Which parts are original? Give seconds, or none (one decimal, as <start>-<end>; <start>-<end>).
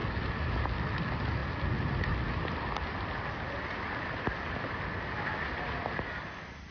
0.0-6.7